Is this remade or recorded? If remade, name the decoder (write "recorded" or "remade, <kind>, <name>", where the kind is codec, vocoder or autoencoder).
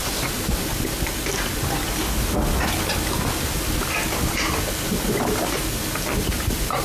recorded